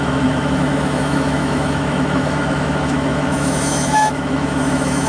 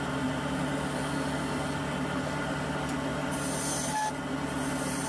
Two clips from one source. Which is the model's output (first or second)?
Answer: first